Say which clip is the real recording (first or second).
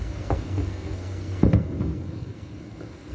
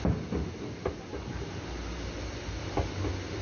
second